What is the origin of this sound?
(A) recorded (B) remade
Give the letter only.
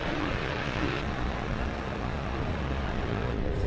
B